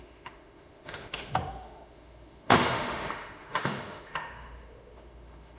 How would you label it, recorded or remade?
remade